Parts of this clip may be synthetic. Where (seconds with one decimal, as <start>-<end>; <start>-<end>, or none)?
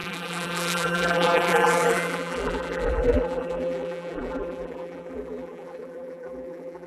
0.0-6.9